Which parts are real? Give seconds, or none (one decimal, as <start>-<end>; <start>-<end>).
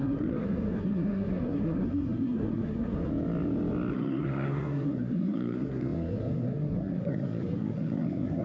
3.1-3.9